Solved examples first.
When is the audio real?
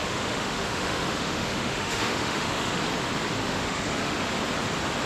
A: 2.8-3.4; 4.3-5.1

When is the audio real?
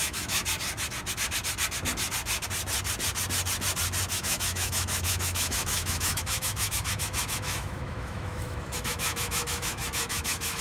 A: 0.4-4.1